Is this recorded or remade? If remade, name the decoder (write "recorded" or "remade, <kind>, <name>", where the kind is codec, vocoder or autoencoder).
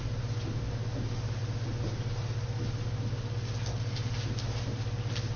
recorded